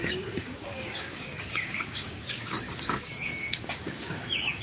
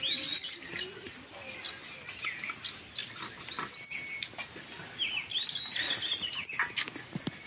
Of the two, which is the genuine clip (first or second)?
second